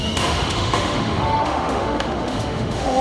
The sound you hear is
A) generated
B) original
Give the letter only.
A